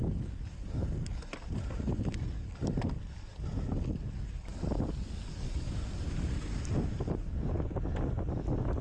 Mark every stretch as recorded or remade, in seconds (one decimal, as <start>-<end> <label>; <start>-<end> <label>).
0.0-8.8 recorded